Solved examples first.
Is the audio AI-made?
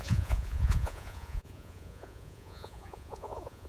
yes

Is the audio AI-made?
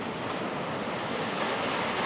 no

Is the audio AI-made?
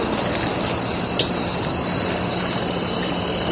no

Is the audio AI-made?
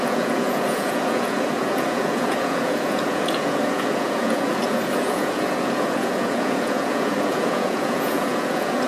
yes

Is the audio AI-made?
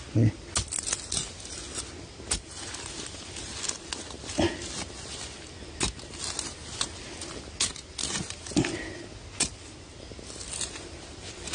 no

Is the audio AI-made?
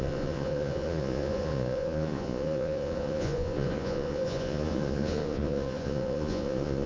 yes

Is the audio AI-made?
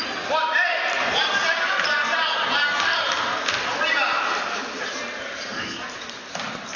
no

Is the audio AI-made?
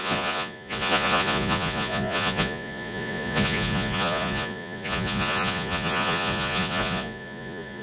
yes